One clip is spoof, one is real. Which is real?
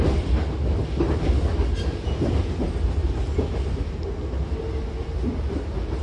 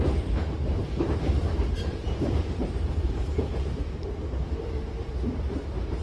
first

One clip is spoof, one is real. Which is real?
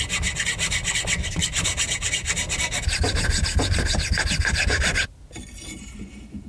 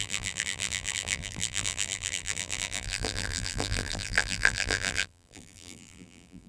first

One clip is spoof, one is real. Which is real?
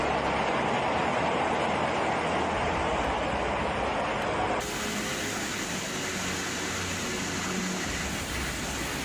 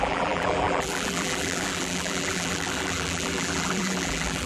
first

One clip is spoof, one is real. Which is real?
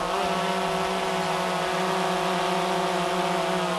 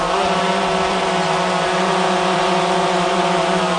first